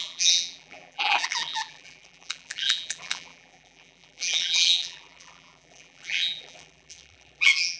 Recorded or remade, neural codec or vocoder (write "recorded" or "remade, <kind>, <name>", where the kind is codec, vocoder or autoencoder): remade, vocoder, BigVGAN v2